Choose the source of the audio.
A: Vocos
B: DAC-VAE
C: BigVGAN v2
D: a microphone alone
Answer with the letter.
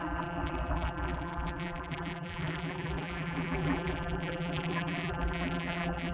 C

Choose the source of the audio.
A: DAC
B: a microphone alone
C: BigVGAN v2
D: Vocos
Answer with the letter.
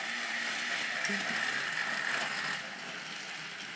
C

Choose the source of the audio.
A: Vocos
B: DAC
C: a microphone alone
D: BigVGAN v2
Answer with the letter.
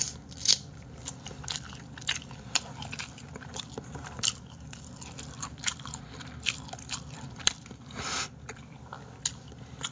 D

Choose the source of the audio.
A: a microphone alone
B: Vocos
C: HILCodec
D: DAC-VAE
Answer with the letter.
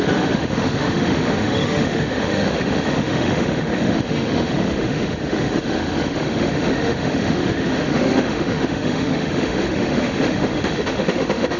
D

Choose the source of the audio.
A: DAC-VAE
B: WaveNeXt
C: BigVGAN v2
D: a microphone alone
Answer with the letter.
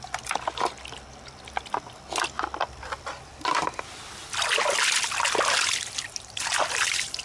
D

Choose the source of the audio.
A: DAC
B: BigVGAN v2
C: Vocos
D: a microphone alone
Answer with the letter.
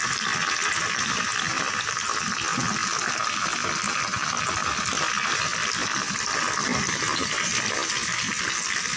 D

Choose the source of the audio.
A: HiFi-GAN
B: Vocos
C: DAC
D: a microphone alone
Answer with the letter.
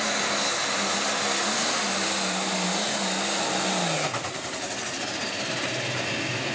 D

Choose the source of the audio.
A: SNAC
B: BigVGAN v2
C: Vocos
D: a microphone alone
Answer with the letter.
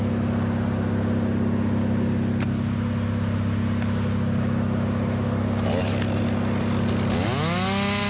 D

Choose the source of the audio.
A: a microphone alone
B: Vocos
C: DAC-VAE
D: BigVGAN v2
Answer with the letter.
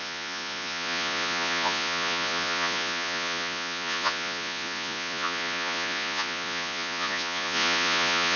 B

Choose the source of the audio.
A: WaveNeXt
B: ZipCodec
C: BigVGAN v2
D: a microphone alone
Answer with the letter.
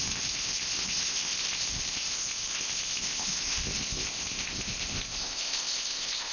B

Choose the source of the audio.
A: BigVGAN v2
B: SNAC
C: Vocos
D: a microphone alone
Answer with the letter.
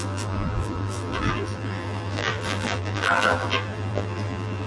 A